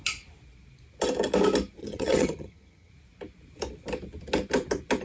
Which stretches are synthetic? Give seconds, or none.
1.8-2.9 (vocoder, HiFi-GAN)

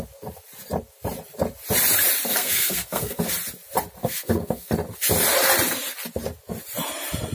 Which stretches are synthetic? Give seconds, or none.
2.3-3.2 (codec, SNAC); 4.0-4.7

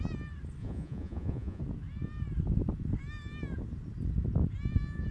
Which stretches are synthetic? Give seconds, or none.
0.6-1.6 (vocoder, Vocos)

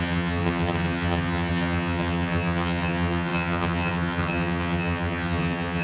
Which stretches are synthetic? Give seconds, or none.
0.0-5.8 (vocoder, HiFi-GAN)

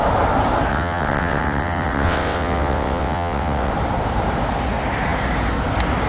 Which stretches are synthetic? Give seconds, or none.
0.7-3.7 (vocoder, WaveNeXt)

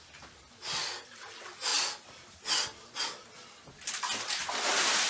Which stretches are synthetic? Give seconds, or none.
none